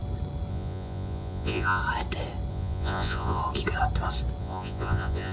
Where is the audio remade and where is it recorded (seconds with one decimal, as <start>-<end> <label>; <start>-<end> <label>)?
0.0-0.5 recorded; 0.5-1.8 remade; 1.8-2.5 recorded; 2.5-3.4 remade; 3.4-4.4 recorded; 4.4-5.3 remade